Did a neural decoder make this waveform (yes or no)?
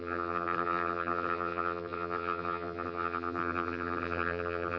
yes